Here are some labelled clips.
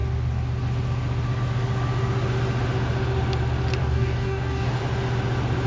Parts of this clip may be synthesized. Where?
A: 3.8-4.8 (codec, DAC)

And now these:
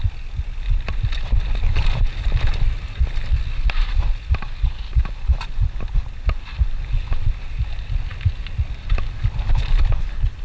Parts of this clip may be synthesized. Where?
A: none

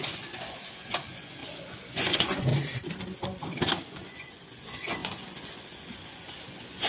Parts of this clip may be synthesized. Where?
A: 0.0-2.5 (vocoder, Vocos); 3.9-6.9

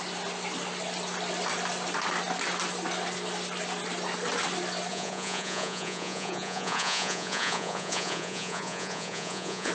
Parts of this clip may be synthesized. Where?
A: 4.9-9.7 (vocoder, Vocos)